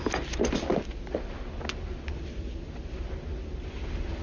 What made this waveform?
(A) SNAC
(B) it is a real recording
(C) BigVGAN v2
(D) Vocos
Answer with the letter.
B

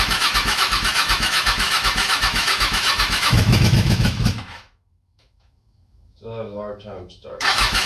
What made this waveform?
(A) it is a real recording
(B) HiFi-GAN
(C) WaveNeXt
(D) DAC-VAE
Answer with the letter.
D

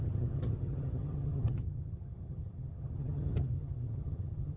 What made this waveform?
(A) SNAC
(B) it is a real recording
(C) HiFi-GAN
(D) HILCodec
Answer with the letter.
C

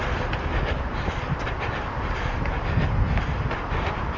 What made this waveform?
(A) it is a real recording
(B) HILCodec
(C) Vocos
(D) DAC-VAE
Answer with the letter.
A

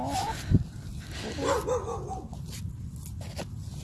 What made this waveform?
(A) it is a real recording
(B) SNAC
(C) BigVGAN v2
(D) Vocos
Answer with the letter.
A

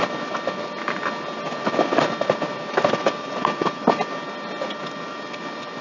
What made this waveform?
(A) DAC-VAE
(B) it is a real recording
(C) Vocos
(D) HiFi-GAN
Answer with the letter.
B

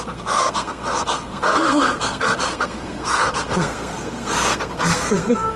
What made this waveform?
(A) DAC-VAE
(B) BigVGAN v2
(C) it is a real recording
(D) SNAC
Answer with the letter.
D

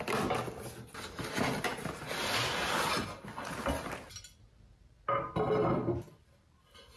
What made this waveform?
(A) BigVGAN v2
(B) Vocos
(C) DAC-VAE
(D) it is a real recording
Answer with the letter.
D